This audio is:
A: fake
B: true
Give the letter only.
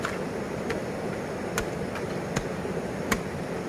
B